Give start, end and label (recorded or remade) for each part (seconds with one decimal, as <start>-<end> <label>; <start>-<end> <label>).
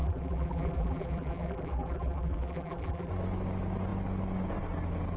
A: 0.0-3.1 remade; 3.1-5.2 recorded